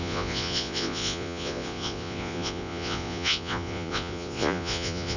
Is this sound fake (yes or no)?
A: yes